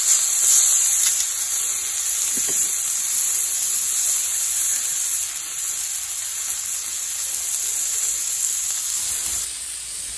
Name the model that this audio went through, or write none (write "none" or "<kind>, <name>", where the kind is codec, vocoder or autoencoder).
none